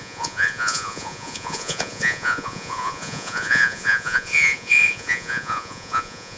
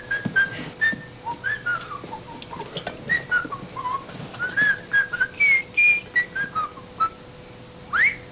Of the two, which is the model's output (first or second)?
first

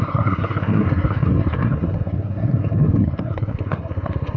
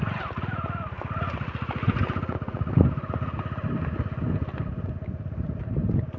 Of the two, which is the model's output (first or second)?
first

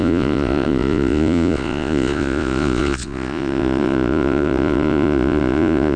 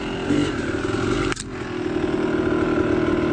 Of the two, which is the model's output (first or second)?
first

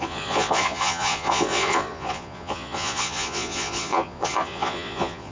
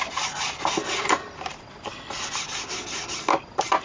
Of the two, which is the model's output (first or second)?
first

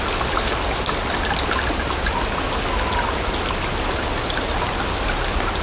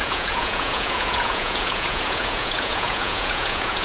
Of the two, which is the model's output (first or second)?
second